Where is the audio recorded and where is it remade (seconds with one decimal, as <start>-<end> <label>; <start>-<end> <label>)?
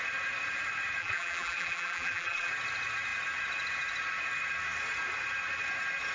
0.0-1.0 recorded; 1.0-2.5 remade; 2.5-6.1 recorded